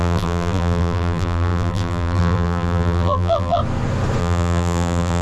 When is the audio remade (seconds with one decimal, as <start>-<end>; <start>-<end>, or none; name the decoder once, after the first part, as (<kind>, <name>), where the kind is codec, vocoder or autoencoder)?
0.0-3.6 (vocoder, BigVGAN v2); 4.2-5.2